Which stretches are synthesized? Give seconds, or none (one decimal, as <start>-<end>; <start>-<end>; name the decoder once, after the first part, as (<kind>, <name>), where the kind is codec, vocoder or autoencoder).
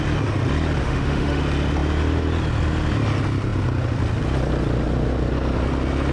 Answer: 0.8-1.4 (autoencoder, DAC-VAE)